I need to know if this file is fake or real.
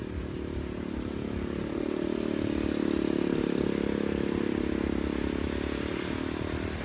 real